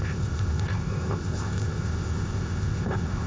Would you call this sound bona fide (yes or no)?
no